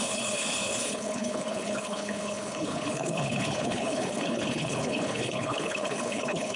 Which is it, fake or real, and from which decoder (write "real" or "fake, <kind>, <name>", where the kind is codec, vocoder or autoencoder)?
fake, codec, HILCodec